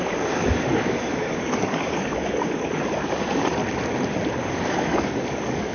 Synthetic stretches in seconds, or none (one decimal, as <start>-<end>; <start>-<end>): 0.0-3.6; 4.4-5.7